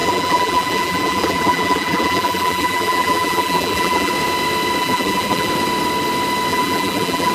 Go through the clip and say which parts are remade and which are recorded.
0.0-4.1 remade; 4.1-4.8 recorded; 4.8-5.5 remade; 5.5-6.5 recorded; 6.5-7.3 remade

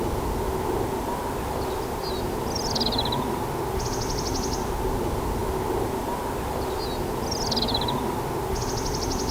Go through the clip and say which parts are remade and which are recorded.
0.0-9.3 recorded

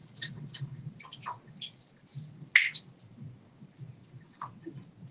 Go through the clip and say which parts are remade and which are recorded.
0.0-0.9 remade; 0.9-4.0 recorded; 4.0-4.6 remade; 4.6-5.1 recorded

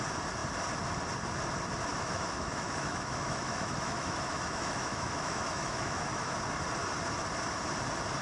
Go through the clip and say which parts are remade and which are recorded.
0.0-1.9 recorded; 1.9-6.3 remade; 6.3-8.2 recorded